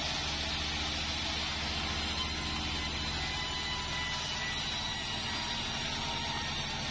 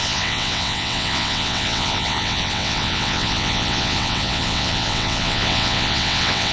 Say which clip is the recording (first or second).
first